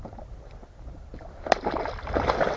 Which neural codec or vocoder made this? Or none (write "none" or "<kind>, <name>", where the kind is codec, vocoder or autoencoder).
none